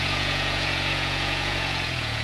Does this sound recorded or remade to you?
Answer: remade